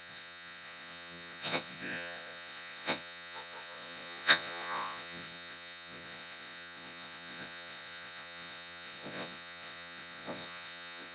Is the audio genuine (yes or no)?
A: no